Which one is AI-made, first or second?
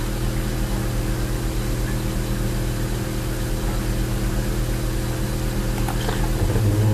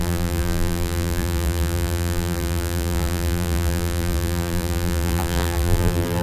second